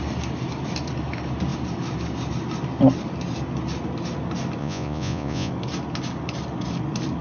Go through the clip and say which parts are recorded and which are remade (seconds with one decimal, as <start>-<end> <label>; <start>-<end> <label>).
0.0-4.6 recorded; 4.6-5.5 remade; 5.5-7.2 recorded